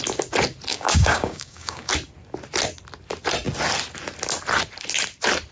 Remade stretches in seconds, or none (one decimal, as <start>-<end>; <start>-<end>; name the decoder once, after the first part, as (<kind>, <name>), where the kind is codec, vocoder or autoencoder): 0.7-1.9 (codec, DAC)